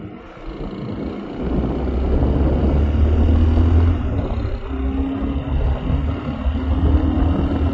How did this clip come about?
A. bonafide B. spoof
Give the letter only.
A